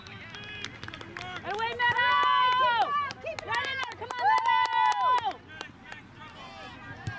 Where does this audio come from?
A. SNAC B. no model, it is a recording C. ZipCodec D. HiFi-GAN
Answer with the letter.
B